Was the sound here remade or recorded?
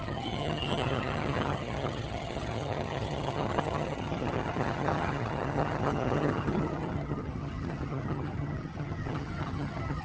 remade